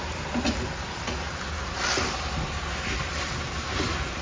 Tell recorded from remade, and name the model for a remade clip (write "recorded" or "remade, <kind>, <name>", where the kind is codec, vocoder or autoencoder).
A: recorded